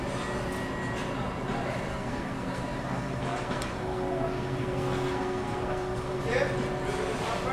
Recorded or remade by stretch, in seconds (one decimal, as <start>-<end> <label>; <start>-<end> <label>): 0.0-1.9 recorded; 1.9-6.2 remade; 6.2-7.5 recorded